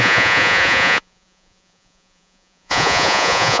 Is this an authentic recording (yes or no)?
no